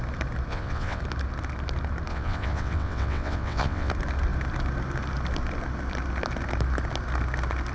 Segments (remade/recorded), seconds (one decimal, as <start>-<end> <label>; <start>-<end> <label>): 0.0-0.5 recorded; 0.5-1.0 remade; 1.0-2.1 recorded; 2.1-3.9 remade; 3.9-7.7 recorded